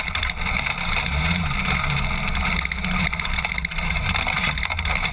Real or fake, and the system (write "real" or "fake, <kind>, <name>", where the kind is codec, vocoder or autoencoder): real